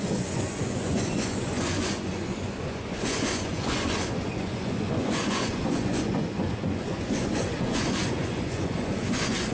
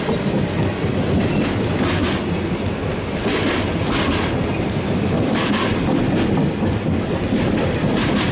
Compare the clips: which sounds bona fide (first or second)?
second